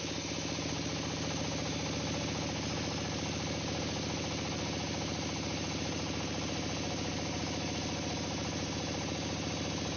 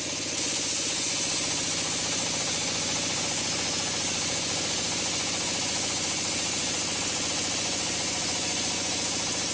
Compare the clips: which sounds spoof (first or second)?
second